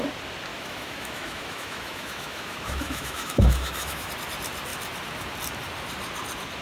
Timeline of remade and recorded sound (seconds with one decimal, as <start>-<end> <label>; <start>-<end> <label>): 0.0-0.5 recorded; 0.5-4.1 remade; 4.1-6.6 recorded

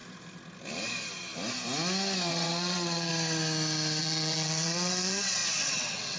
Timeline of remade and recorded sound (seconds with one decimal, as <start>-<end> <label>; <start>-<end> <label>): 0.0-2.3 recorded; 2.3-3.1 remade; 3.1-4.0 recorded; 4.0-6.2 remade

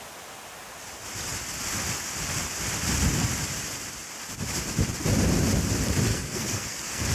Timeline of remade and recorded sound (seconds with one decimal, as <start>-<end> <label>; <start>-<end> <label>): 0.0-6.1 recorded; 6.1-7.1 remade